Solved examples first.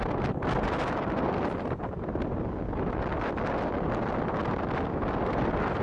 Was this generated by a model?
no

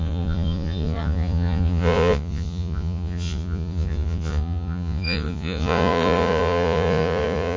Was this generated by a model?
yes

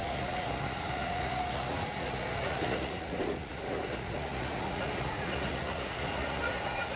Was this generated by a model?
yes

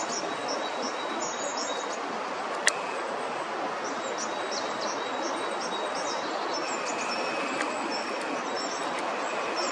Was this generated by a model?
no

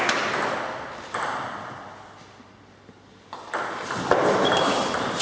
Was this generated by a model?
no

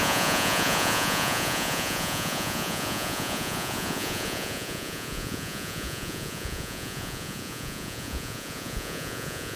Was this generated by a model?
yes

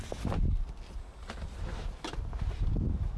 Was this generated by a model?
no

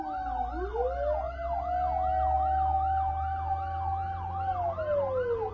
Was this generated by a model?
no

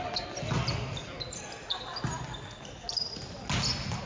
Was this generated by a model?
no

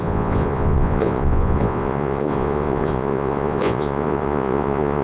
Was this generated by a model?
yes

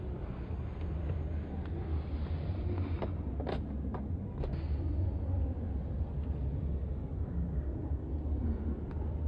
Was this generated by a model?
no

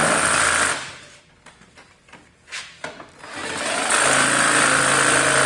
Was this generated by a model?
no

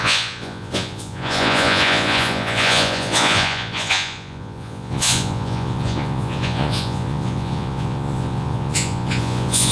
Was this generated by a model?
yes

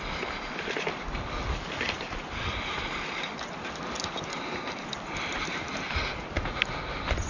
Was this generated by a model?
no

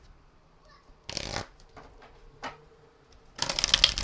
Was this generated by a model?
no